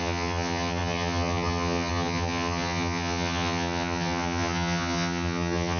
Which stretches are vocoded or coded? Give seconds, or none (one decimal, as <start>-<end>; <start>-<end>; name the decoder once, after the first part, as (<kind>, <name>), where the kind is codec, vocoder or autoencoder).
0.0-5.8 (vocoder, HiFi-GAN)